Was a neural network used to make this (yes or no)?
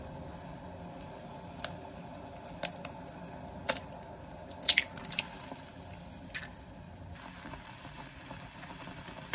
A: no